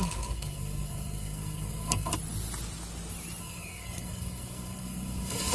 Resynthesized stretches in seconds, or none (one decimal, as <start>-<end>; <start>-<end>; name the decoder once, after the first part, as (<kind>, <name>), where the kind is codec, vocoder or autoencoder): 0.0-2.1 (codec, SNAC); 3.4-5.5